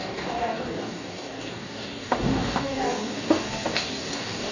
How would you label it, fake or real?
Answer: fake